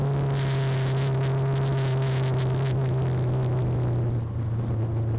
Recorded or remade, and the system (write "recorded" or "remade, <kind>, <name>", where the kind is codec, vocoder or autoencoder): recorded